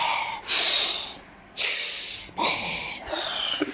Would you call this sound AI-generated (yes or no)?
yes